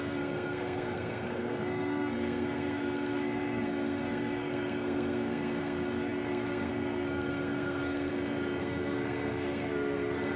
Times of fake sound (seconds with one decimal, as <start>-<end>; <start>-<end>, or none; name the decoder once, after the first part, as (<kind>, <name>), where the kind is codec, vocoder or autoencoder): 0.0-8.1 (codec, SNAC); 8.6-10.4